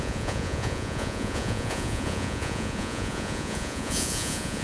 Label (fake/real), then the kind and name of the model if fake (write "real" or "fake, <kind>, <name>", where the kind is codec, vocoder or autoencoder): fake, vocoder, Vocos